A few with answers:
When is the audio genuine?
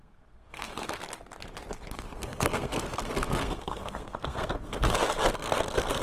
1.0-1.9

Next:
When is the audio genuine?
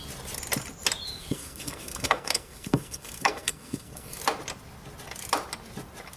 0.0-1.2; 4.2-6.2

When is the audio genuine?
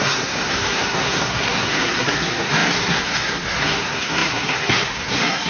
none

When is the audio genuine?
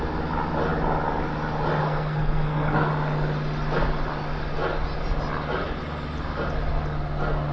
0.0-1.8; 2.9-7.5